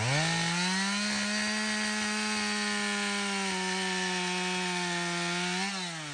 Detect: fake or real real